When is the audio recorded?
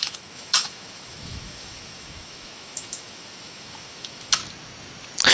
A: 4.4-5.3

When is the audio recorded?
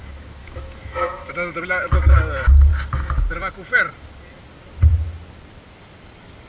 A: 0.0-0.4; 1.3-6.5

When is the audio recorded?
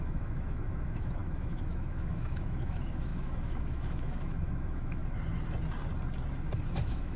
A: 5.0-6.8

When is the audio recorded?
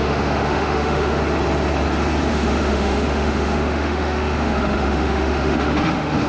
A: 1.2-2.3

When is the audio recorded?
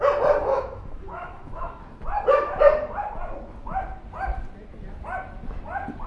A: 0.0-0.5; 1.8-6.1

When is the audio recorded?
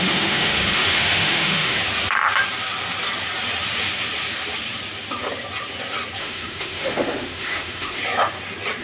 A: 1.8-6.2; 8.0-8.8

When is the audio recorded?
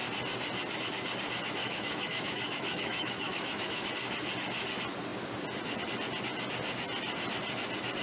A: 0.0-1.6; 3.9-8.0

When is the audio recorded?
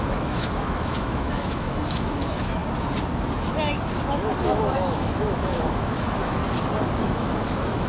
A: 2.6-4.4; 6.4-7.0